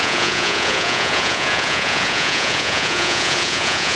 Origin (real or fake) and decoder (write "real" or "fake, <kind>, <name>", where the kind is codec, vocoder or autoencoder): fake, vocoder, Vocos